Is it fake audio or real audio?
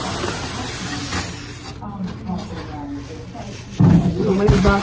real